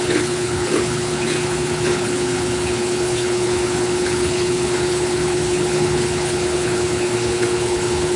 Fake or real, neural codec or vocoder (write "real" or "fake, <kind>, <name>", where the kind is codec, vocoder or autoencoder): fake, codec, HILCodec